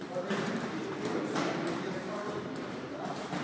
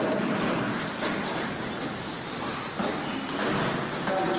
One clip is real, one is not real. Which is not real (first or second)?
first